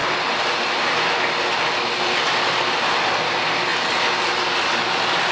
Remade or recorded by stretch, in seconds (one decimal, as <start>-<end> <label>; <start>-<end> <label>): 0.0-5.3 recorded